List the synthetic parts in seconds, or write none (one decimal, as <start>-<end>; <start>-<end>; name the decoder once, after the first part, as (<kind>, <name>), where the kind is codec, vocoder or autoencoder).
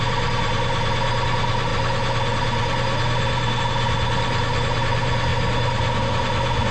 none